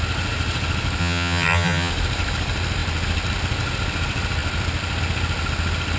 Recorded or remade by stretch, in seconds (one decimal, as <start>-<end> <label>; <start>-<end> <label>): 0.0-1.0 recorded; 1.0-1.9 remade; 1.9-6.0 recorded